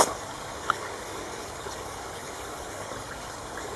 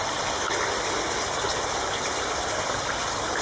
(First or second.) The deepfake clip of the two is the first